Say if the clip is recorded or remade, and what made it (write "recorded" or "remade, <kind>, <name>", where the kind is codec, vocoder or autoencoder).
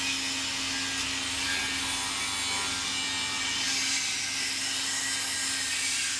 recorded